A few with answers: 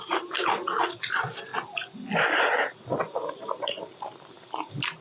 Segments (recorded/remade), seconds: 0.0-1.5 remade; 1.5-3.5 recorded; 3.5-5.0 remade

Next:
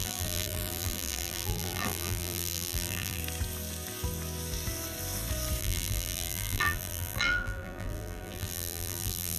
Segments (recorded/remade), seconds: 0.0-3.2 remade; 3.2-5.6 recorded; 5.6-9.4 remade